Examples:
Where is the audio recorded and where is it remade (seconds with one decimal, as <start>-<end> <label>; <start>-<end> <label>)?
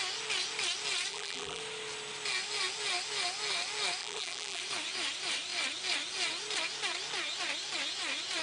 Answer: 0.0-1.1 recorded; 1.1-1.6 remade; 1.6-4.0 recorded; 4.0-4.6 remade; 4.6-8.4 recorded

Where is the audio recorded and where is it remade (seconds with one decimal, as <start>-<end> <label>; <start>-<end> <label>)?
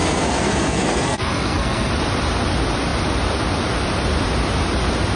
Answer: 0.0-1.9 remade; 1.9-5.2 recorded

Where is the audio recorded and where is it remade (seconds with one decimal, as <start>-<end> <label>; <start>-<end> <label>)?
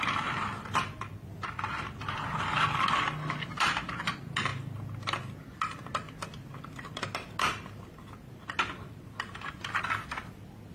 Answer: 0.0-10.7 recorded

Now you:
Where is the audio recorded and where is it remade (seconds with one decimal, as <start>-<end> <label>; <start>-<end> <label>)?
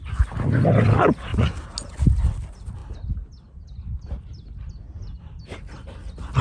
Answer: 0.0-6.4 recorded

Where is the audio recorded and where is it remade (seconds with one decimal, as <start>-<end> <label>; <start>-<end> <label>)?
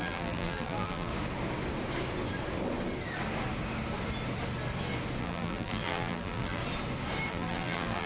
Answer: 0.0-1.1 remade; 1.1-5.2 recorded; 5.2-6.6 remade; 6.6-7.3 recorded; 7.3-8.1 remade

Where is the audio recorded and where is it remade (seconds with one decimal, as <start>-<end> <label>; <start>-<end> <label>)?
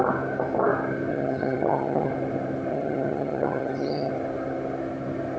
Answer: 0.0-1.1 recorded; 1.1-2.1 remade; 2.1-2.7 recorded; 2.7-4.1 remade; 4.1-5.4 recorded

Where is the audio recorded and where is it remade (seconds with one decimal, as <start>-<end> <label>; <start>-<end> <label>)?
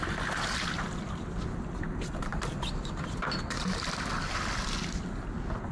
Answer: 0.0-2.3 recorded; 2.3-4.1 remade; 4.1-5.7 recorded